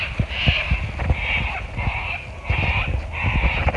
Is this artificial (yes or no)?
no